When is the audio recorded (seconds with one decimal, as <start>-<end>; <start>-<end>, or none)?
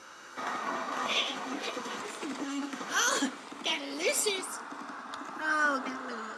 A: 2.0-2.4; 2.9-6.4